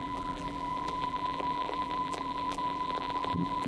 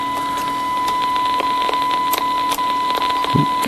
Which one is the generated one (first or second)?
first